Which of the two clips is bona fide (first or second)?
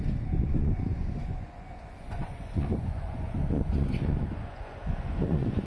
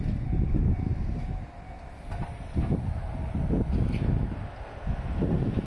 second